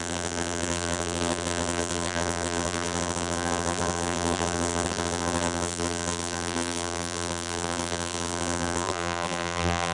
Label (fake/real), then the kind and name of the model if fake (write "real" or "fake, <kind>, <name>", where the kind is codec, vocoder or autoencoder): fake, vocoder, BigVGAN v2